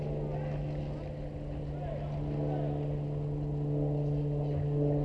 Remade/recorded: recorded